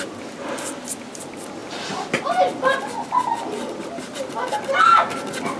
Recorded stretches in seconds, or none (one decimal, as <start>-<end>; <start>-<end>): 0.0-5.6